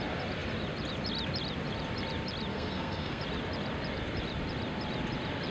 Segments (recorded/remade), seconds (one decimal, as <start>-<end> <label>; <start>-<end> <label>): 0.0-2.5 recorded; 2.5-3.2 remade; 3.2-5.5 recorded

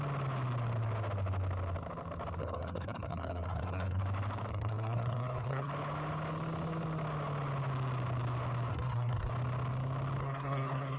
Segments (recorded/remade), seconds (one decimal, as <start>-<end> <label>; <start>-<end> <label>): 0.0-2.4 recorded; 2.4-4.0 remade; 4.0-4.5 recorded; 4.5-5.7 remade; 5.7-8.7 recorded; 8.7-9.3 remade; 9.3-10.2 recorded; 10.2-11.0 remade

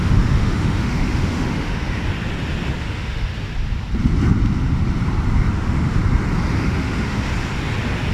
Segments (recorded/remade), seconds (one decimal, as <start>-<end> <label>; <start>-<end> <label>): 0.0-2.0 remade; 2.0-2.8 recorded; 2.8-3.3 remade; 3.3-5.5 recorded; 5.5-6.0 remade; 6.0-6.6 recorded; 6.6-7.3 remade; 7.3-8.1 recorded

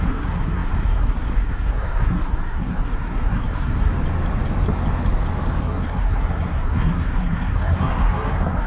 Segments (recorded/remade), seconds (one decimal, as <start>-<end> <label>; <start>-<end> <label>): 0.0-3.9 remade; 3.9-5.6 recorded; 5.6-8.7 remade

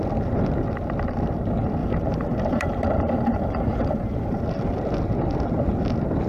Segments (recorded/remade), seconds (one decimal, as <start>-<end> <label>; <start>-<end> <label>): 0.0-1.8 recorded; 1.8-4.4 remade; 4.4-6.3 recorded

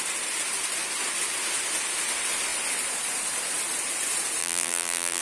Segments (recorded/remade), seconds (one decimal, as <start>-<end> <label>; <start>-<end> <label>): 0.0-4.4 recorded; 4.4-5.2 remade